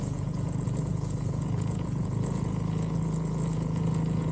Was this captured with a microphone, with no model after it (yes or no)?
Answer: no